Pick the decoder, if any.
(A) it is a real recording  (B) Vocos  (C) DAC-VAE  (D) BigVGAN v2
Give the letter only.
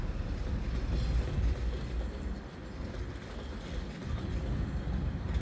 A